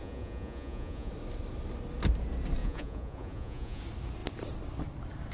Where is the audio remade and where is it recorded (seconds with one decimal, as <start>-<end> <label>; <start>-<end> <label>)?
0.0-1.1 remade; 1.1-2.6 recorded; 2.6-3.8 remade; 3.8-5.3 recorded